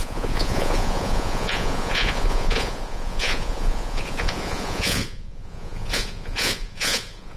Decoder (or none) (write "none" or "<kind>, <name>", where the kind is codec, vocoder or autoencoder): vocoder, Vocos